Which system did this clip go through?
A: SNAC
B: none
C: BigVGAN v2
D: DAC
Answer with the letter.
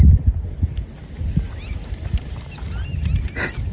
B